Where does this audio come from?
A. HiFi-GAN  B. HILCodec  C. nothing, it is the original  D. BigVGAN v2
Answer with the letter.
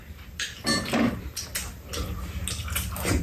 C